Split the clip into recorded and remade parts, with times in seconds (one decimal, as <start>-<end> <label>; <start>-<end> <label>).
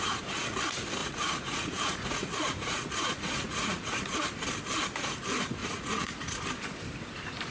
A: 0.0-1.0 recorded; 1.0-4.0 remade; 4.0-5.6 recorded; 5.6-6.4 remade; 6.4-7.5 recorded